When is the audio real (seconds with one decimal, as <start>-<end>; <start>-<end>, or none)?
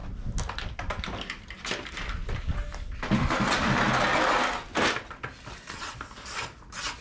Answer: 0.0-7.0